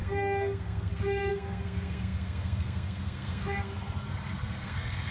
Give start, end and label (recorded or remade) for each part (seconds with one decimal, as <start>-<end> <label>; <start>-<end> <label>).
0.0-5.1 remade